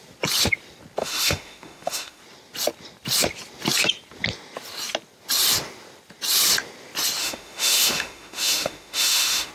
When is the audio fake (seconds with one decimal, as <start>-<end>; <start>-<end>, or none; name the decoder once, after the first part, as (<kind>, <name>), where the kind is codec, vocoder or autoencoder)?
1.0-2.2 (autoencoder, DAC-VAE); 7.2-9.5